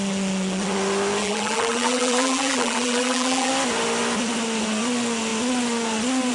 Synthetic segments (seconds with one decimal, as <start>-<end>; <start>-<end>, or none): 1.2-3.5